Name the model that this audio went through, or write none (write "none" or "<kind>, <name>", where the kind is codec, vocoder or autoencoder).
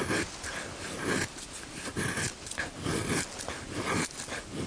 none